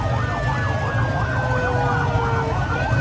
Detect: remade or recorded recorded